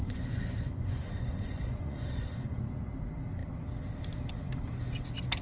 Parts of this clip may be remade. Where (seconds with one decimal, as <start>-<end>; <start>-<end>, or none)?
0.0-2.6